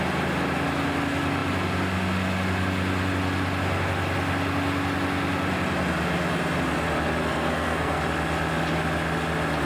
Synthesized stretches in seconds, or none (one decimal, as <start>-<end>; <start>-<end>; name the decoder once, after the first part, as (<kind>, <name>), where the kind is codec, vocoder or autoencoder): 7.2-8.0 (codec, SNAC)